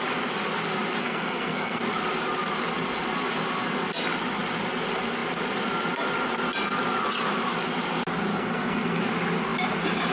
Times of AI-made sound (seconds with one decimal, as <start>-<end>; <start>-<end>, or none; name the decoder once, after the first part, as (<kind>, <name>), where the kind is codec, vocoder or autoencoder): 1.0-1.8 (codec, SNAC); 8.3-9.0